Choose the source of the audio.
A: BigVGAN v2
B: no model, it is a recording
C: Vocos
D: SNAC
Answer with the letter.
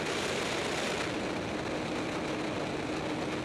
B